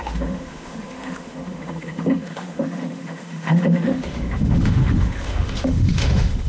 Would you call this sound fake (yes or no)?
yes